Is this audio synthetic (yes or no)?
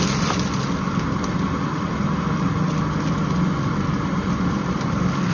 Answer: no